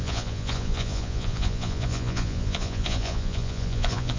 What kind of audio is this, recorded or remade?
remade